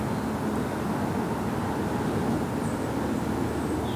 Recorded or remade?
recorded